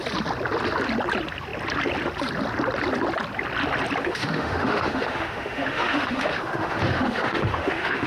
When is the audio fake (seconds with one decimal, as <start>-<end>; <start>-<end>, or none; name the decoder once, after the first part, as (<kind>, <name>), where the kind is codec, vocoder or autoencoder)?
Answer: 4.0-8.1 (autoencoder, DAC-VAE)